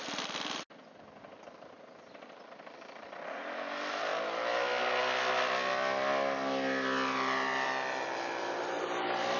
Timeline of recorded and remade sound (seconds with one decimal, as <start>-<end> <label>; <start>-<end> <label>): 0.0-9.4 recorded